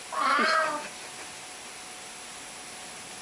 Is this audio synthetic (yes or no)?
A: no